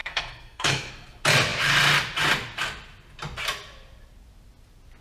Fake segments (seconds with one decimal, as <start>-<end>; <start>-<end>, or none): 0.0-0.9